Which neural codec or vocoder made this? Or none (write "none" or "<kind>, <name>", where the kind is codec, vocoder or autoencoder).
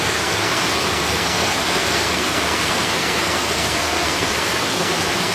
codec, SNAC